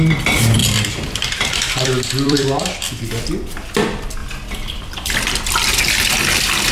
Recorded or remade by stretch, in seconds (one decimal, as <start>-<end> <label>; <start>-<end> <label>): 0.0-0.6 recorded; 0.6-3.3 remade; 3.3-4.2 recorded; 4.2-5.8 remade; 5.8-6.7 recorded